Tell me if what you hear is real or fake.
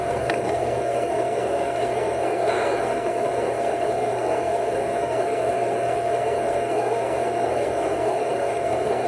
fake